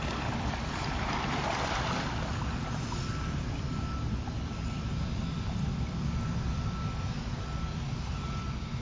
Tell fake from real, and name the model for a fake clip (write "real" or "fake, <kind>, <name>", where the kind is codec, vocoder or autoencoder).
real